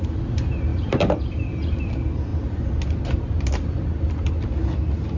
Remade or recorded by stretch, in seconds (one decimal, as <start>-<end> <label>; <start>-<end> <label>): 0.0-0.7 recorded; 0.7-1.7 remade; 1.7-5.2 recorded